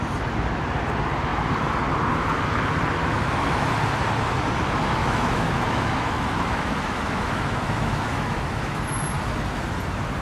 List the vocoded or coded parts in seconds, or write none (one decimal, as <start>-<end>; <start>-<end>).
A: 3.0-3.7; 5.0-8.8